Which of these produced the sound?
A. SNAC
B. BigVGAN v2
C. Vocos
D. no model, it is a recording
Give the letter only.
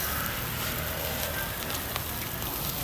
D